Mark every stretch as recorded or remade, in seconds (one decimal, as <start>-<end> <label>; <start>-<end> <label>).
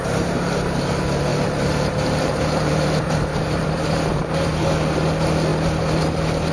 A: 0.0-1.3 recorded; 1.3-4.5 remade; 4.5-6.5 recorded